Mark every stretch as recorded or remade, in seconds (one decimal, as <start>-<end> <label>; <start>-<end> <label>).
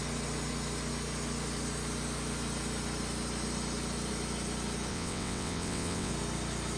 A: 0.0-4.9 recorded; 4.9-6.1 remade; 6.1-6.8 recorded